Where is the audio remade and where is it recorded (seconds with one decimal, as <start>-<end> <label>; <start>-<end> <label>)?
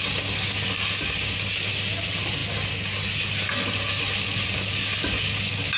0.0-5.8 recorded